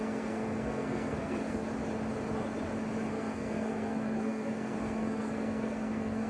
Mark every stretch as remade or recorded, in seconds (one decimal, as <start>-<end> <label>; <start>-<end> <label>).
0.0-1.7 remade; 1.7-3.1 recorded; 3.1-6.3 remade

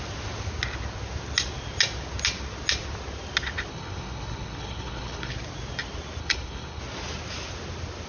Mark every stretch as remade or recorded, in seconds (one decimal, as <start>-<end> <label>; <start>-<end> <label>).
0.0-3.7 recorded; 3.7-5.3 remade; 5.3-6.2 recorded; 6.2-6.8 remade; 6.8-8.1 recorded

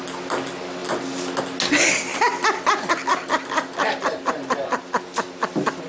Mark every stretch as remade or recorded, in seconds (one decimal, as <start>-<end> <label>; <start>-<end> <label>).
0.0-5.9 recorded

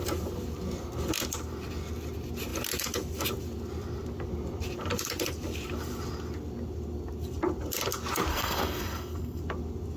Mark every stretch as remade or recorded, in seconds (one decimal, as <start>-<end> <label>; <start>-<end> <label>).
0.0-8.3 recorded; 8.3-9.4 remade; 9.4-10.0 recorded

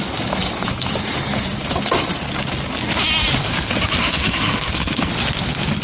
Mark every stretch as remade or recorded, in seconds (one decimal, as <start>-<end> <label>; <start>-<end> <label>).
0.0-4.0 recorded; 4.0-5.1 remade; 5.1-5.8 recorded

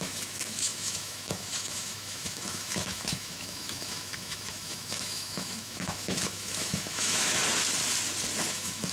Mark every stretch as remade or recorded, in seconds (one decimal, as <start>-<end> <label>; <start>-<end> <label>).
0.0-7.4 remade; 7.4-8.5 recorded; 8.5-8.9 remade

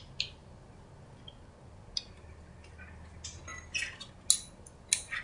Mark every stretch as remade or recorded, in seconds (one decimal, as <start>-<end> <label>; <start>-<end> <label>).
0.0-5.2 recorded

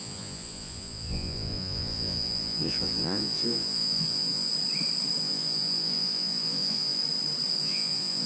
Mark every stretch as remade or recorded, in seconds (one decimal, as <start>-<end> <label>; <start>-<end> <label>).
0.0-4.5 remade; 4.5-5.2 recorded; 5.2-7.0 remade; 7.0-7.6 recorded; 7.6-8.3 remade